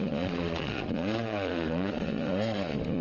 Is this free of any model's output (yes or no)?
no